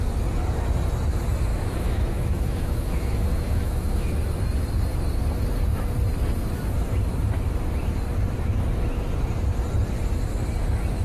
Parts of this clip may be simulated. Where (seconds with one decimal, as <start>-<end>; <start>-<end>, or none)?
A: 1.5-4.1